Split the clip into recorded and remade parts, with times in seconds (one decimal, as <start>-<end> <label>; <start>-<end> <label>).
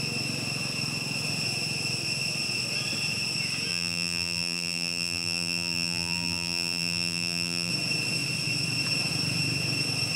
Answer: 0.0-3.7 recorded; 3.7-7.7 remade; 7.7-10.2 recorded